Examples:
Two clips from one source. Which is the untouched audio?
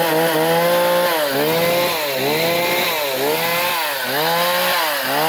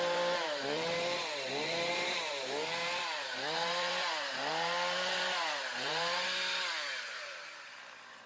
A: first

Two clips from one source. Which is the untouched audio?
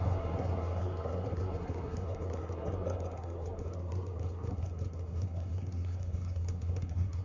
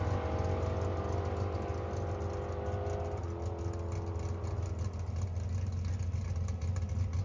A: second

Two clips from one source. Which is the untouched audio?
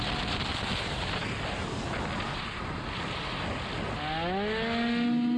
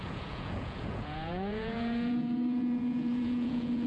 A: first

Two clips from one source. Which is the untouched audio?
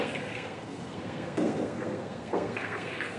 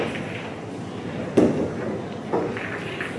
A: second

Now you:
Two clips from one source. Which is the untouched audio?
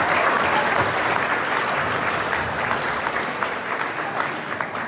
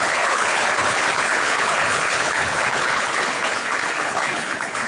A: first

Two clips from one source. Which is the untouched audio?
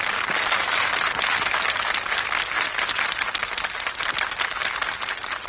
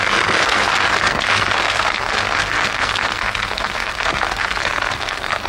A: first